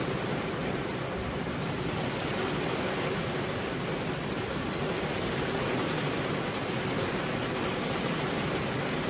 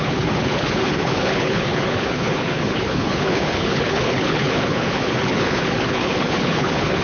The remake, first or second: second